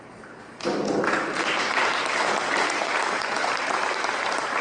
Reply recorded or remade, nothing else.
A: remade